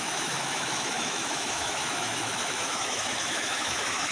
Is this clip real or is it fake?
fake